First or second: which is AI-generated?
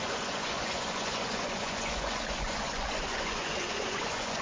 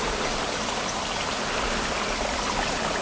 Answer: first